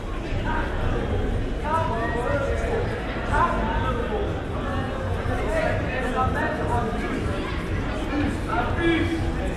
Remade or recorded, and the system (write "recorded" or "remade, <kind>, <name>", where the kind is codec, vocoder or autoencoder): recorded